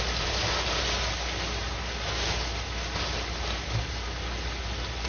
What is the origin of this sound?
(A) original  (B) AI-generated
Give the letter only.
A